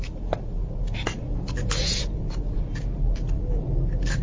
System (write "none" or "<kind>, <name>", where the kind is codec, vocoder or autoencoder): none